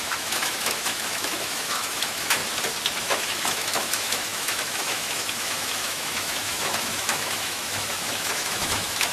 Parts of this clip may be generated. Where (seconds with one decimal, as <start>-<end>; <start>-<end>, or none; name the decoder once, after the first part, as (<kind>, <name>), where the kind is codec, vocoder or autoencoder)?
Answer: 0.0-2.4 (autoencoder, DAC-VAE); 3.0-9.1